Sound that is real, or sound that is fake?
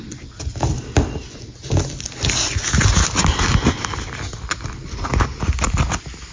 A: real